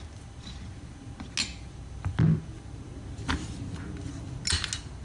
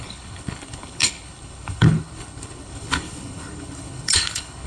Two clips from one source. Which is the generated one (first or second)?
second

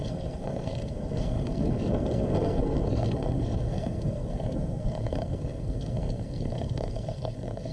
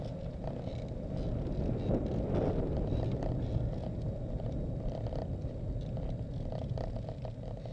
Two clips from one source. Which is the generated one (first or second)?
first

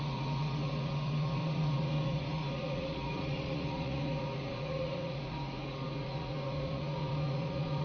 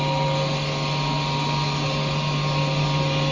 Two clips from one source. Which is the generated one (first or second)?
first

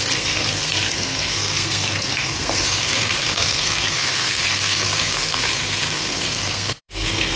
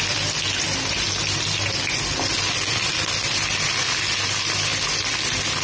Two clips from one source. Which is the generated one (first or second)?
first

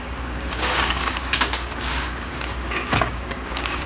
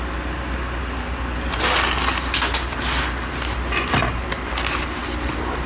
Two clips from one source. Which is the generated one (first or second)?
first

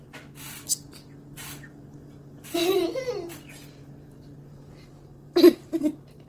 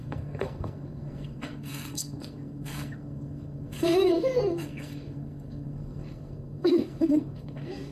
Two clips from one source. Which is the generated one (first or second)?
second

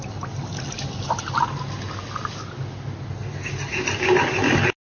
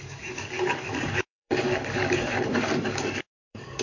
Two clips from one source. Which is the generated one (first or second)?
second